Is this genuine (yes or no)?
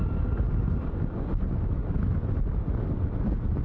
yes